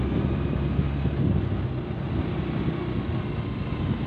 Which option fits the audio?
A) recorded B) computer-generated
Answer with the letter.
A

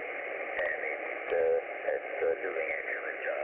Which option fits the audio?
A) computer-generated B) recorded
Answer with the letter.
B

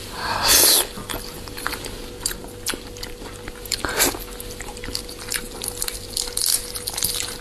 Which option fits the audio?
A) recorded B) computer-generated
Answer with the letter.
A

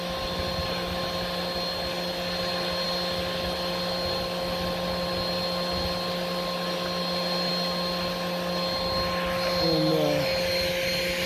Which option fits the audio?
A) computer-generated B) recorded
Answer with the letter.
B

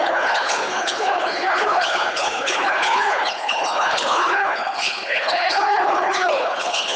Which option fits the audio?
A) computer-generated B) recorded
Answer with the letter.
A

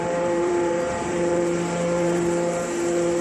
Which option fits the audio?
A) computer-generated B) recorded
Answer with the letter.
A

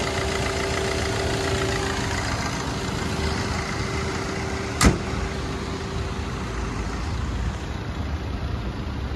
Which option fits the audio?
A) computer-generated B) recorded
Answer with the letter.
B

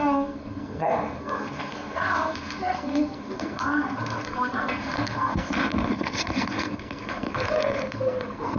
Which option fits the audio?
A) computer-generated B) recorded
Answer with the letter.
A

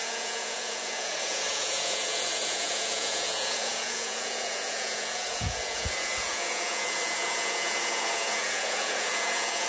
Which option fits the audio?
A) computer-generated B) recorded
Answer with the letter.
A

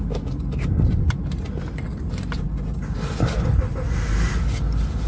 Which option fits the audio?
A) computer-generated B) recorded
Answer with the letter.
B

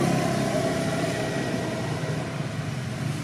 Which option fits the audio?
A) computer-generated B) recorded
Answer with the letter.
B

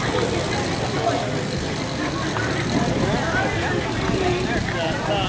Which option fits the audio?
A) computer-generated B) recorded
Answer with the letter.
B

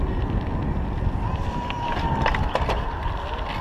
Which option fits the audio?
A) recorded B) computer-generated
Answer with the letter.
A